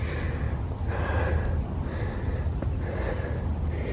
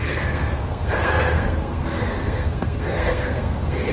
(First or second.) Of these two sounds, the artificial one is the second